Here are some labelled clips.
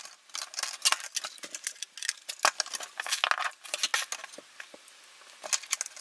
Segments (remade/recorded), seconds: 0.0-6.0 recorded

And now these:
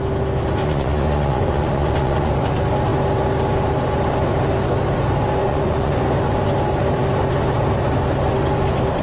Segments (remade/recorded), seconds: 0.0-0.6 recorded; 0.6-2.3 remade; 2.3-5.4 recorded; 5.4-6.0 remade; 6.0-9.0 recorded